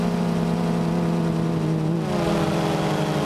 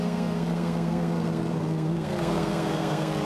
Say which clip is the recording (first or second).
first